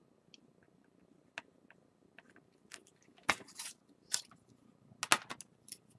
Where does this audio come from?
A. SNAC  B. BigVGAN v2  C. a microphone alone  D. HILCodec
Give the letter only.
C